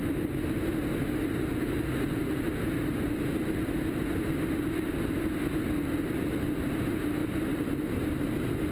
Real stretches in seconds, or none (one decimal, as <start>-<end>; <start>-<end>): 0.0-8.7